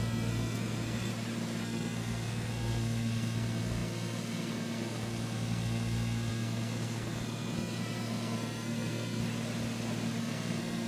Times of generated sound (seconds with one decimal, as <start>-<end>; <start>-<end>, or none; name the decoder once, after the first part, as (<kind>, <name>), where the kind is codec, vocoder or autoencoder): 0.0-1.1 (codec, SNAC); 1.6-9.2; 10.2-10.9